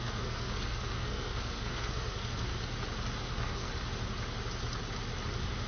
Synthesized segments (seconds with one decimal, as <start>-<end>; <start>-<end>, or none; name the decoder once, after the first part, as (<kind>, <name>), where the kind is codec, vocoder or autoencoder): 0.0-2.5 (codec, SNAC); 3.2-3.7